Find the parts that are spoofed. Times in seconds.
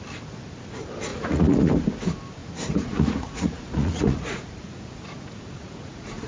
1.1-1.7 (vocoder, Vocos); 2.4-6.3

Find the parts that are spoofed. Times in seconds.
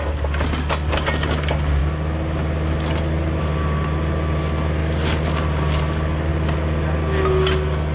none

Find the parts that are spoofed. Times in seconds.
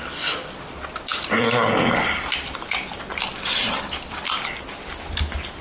none